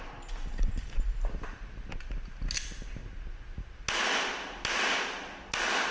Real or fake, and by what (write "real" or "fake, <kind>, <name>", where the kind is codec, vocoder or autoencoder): real